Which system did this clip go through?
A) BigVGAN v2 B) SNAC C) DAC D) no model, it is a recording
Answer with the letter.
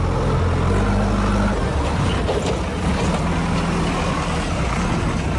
D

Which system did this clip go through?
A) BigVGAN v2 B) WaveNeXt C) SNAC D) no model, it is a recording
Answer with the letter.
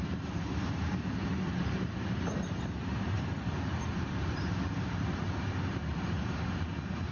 A